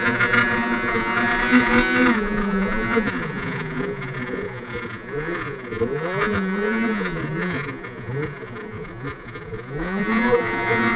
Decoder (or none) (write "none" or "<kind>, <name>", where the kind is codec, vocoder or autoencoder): vocoder, Vocos